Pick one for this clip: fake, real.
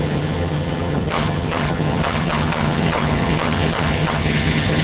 fake